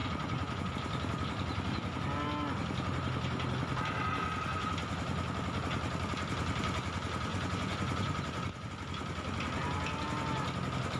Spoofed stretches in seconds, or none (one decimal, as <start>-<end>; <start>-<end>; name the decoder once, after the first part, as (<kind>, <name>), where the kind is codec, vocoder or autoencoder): 0.0-0.7 (vocoder, Vocos); 7.3-8.7